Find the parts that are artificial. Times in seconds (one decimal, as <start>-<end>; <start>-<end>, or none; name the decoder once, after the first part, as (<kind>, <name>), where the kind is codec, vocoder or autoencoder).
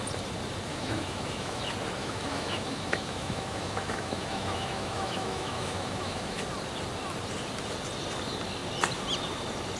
0.7-1.6 (autoencoder, DAC-VAE); 2.0-6.4